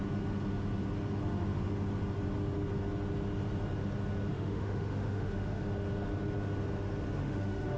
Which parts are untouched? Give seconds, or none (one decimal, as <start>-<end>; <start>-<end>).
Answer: 0.0-4.3; 5.6-7.2